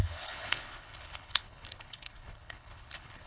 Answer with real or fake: fake